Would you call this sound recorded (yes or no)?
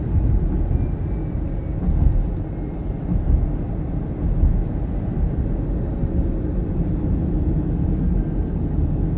yes